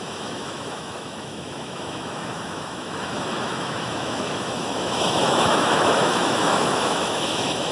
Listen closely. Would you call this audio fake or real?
fake